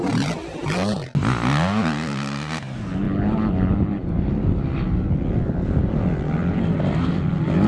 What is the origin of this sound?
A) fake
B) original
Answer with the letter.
B